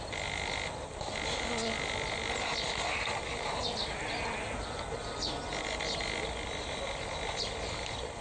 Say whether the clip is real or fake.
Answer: real